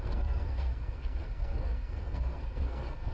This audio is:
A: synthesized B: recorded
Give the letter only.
A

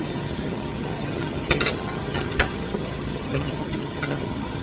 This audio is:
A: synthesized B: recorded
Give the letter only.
A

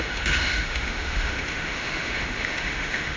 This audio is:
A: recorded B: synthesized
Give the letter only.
B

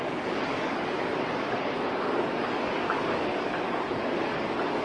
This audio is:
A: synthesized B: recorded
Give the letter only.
A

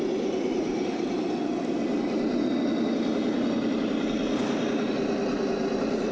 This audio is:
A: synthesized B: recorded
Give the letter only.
B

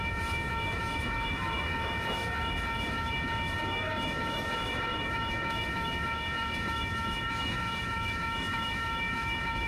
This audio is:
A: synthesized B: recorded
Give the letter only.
A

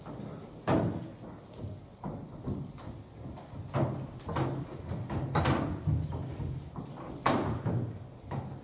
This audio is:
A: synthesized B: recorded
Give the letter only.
B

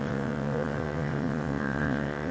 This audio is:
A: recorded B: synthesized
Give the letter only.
B